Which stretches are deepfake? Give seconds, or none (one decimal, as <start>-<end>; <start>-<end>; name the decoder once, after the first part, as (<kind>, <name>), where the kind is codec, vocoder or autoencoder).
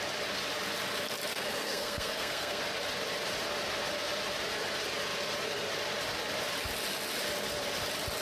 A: 1.3-2.6 (codec, SNAC)